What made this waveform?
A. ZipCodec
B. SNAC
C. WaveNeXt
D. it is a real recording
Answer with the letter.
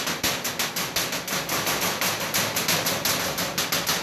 D